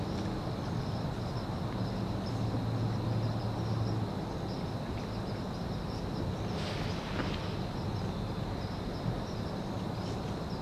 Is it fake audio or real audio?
real